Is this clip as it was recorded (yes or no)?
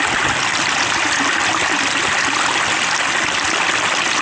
yes